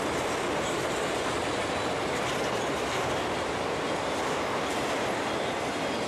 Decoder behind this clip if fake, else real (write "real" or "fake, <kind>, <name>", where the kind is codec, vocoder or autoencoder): real